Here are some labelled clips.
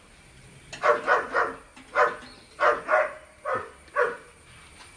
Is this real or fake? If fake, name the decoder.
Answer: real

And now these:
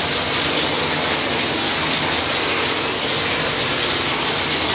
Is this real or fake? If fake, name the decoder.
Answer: real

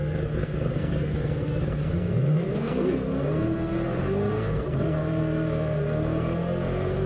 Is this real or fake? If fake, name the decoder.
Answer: fake, codec, SNAC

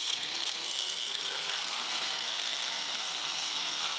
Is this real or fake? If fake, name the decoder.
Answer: fake, codec, SNAC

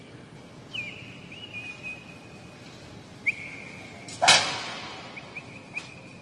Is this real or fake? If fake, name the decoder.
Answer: real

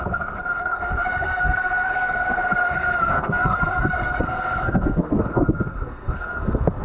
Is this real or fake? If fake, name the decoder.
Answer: fake, codec, SNAC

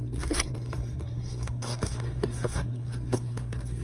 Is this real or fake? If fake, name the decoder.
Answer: fake, codec, SNAC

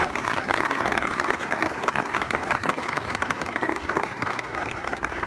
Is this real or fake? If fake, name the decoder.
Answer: fake, codec, SNAC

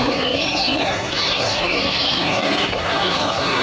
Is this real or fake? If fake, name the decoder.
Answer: fake, codec, SNAC